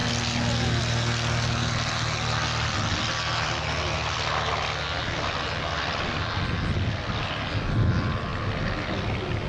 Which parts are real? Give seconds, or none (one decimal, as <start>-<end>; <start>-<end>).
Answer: 0.0-9.5